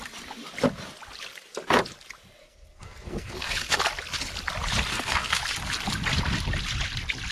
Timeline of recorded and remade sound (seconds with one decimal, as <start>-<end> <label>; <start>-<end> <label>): 0.0-2.4 recorded; 2.4-3.8 remade; 3.8-4.9 recorded; 4.9-5.4 remade; 5.4-7.3 recorded